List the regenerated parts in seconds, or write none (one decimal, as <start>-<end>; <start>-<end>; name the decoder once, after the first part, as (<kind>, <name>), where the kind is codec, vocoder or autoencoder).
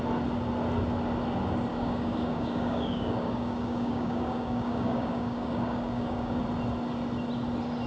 1.7-6.4 (codec, DAC)